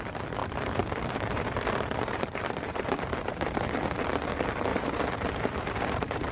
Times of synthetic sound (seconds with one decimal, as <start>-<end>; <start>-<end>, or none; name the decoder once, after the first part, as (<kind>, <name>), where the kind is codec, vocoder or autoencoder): 0.4-3.8 (vocoder, BigVGAN v2); 4.7-6.3

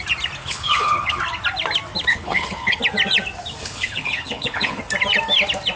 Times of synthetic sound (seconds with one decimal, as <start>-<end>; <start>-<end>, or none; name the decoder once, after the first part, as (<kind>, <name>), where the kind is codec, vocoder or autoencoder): 0.4-1.2 (codec, HILCodec); 2.1-2.8; 3.6-4.8